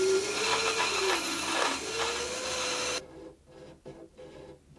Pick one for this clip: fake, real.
real